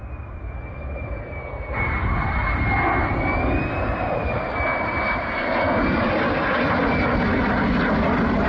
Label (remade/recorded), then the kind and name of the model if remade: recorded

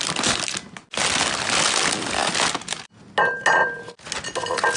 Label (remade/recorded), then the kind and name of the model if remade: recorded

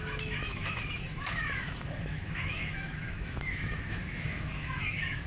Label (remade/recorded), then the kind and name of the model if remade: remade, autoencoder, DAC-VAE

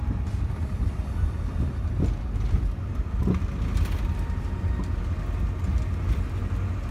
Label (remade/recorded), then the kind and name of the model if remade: recorded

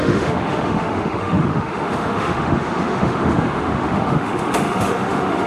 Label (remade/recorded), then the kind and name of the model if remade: remade, autoencoder, DAC-VAE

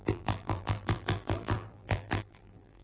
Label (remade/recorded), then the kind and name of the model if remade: remade, vocoder, BigVGAN v2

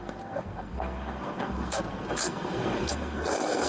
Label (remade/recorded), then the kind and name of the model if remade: remade, codec, SNAC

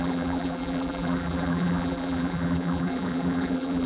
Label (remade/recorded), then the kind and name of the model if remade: remade, vocoder, BigVGAN v2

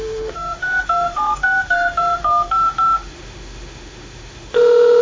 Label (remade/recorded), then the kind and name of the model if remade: remade, autoencoder, DAC-VAE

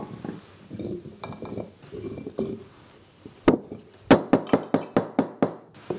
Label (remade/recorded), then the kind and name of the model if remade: recorded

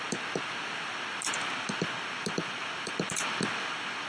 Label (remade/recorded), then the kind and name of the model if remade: recorded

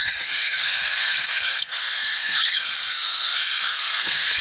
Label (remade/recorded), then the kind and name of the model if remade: remade, codec, SNAC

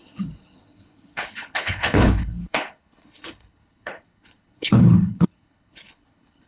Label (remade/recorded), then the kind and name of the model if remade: remade, codec, HILCodec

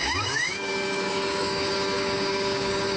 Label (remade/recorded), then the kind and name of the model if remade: remade, codec, DAC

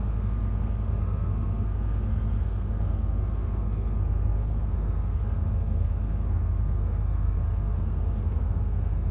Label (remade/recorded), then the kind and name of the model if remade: remade, codec, SNAC